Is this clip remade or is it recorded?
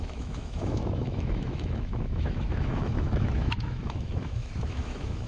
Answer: remade